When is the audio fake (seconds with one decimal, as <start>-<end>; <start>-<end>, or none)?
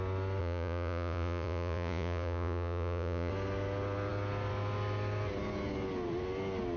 0.4-3.3